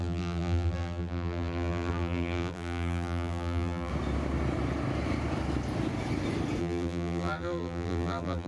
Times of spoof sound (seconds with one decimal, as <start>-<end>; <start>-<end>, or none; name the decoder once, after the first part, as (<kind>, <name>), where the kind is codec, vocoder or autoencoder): 0.0-3.9 (vocoder, BigVGAN v2); 6.6-8.5

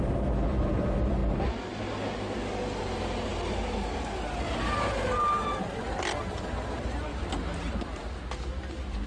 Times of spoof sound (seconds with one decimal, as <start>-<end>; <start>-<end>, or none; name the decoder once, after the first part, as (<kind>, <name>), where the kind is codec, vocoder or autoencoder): none

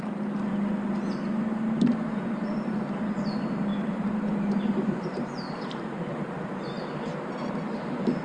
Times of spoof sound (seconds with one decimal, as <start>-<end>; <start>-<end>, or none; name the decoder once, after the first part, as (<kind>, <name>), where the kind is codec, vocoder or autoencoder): 0.0-0.5 (vocoder, BigVGAN v2); 1.5-8.2

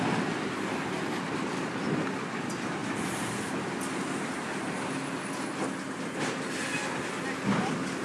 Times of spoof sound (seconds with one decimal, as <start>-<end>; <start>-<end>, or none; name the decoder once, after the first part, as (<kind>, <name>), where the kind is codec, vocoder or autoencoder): none

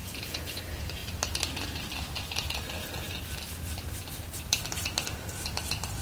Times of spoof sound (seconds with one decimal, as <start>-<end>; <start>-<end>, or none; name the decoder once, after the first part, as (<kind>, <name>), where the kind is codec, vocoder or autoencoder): 0.0-0.6 (vocoder, Vocos)